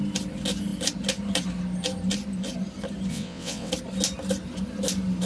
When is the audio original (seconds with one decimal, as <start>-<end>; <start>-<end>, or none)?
0.0-3.1; 3.7-5.3

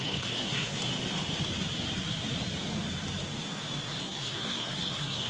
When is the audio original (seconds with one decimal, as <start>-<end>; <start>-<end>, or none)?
0.8-4.0

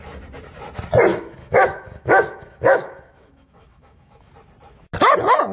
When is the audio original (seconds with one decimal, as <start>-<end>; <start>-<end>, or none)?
0.0-1.1; 4.3-5.5